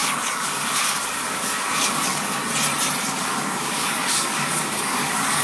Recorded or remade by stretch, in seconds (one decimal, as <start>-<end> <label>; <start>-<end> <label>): 0.0-2.4 remade; 2.4-3.1 recorded; 3.1-5.4 remade